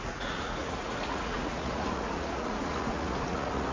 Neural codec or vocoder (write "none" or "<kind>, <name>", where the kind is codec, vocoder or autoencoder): vocoder, Vocos